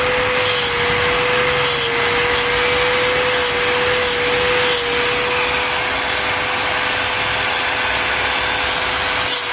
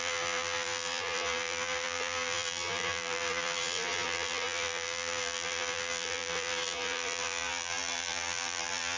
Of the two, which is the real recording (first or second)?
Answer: first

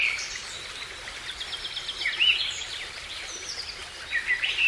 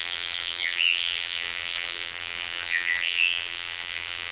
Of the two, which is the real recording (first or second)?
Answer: first